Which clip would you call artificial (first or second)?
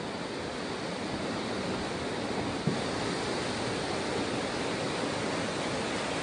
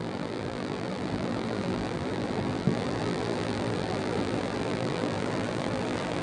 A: second